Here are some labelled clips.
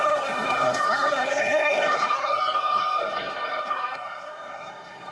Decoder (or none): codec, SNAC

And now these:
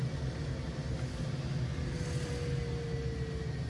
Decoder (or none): none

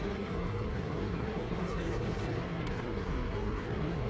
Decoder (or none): codec, SNAC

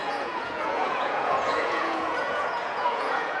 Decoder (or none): vocoder, Vocos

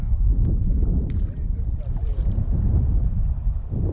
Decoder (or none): vocoder, BigVGAN v2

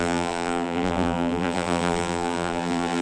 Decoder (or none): vocoder, BigVGAN v2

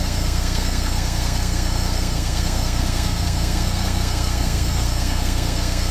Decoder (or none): codec, SNAC